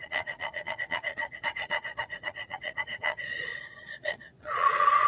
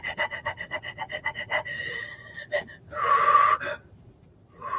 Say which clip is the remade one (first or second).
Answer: first